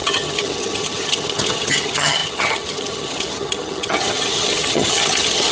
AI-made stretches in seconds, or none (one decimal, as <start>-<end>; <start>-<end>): 0.0-5.5